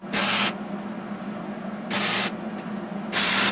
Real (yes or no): yes